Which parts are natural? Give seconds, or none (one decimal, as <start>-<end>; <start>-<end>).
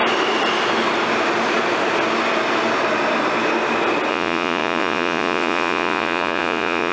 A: 0.0-4.1